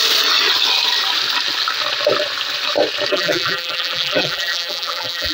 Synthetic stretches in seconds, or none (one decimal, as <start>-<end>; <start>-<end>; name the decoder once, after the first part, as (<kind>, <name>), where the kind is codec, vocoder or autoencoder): 3.1-5.3 (vocoder, BigVGAN v2)